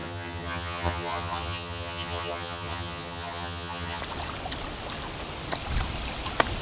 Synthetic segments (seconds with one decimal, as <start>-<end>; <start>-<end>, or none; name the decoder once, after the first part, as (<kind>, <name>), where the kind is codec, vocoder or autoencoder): 0.0-4.0 (vocoder, HiFi-GAN)